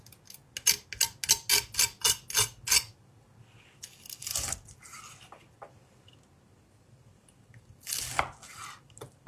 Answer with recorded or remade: recorded